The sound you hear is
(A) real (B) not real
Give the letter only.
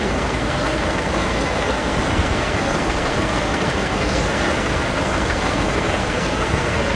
B